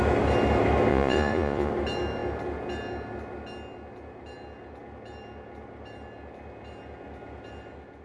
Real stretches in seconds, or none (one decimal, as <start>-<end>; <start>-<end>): 0.0-0.9; 1.7-8.0